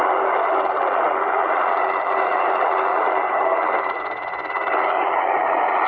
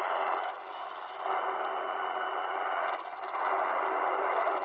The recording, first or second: first